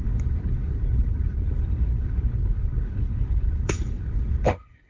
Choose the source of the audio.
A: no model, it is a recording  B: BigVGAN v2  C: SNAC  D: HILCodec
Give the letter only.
D